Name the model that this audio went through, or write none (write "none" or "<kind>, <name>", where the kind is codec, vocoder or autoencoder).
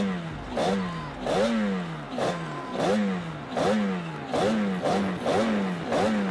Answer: none